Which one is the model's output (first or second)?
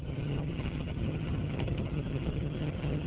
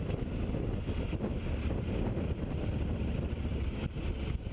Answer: first